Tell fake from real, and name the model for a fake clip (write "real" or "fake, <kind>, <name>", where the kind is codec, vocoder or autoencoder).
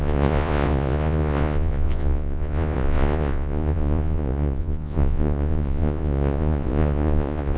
fake, vocoder, Vocos